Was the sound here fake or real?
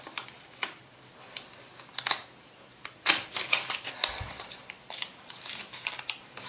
fake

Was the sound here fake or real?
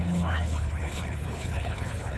fake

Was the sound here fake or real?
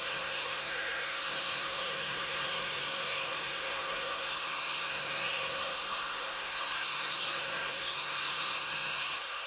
fake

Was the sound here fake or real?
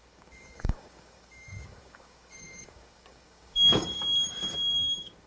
fake